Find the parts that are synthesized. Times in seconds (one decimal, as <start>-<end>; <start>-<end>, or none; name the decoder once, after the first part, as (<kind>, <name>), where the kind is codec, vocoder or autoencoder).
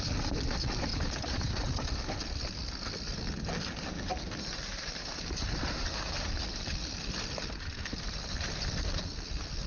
0.9-1.5 (vocoder, BigVGAN v2); 4.7-6.1